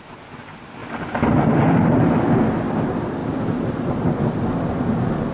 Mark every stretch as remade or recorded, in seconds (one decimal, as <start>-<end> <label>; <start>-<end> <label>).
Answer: 0.0-5.3 recorded